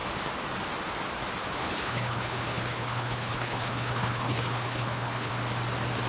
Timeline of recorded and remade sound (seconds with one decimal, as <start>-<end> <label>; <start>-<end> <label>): 0.0-1.6 recorded; 1.6-5.3 remade; 5.3-6.1 recorded